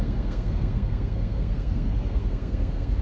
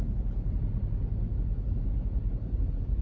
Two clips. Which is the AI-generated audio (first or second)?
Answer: first